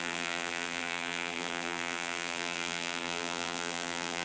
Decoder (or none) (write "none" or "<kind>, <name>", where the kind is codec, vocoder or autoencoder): vocoder, BigVGAN v2